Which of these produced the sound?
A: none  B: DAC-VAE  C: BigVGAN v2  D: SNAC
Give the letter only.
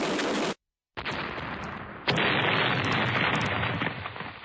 A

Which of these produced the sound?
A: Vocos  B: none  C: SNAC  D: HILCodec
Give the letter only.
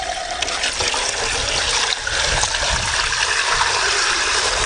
B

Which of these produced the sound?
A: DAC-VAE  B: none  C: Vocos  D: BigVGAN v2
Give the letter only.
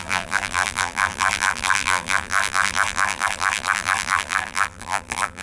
D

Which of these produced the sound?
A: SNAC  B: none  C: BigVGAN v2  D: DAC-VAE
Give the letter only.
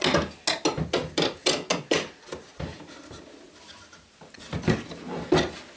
B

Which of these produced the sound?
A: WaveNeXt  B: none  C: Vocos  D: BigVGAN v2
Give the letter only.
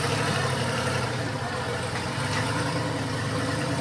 D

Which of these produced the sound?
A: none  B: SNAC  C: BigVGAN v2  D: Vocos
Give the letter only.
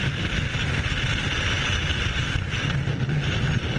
A